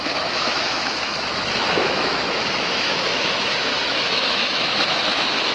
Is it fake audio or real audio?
fake